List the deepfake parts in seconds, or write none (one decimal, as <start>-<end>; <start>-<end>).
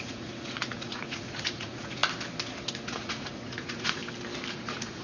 0.0-2.0; 2.7-4.0; 4.5-5.0